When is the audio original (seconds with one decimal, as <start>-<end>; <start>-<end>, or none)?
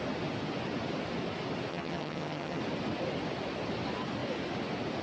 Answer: 0.0-1.7; 2.6-5.0